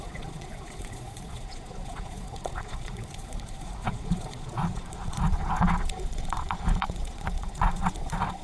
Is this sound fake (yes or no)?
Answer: yes